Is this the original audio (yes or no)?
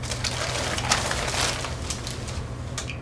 yes